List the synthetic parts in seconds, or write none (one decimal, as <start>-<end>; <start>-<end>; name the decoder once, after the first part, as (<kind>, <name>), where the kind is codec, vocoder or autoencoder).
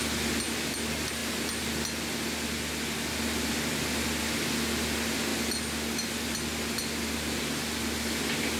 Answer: none